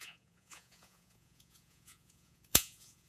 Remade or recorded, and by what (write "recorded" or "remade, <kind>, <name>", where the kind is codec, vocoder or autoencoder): remade, vocoder, Vocos